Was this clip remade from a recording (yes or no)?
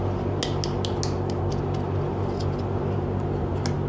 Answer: no